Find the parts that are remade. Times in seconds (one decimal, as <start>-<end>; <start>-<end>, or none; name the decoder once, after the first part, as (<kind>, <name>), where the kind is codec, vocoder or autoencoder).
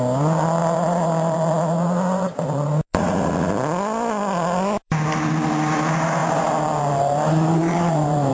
0.6-3.3 (vocoder, BigVGAN v2); 6.2-8.3